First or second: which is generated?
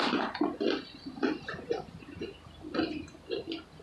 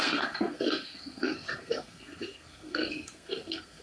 second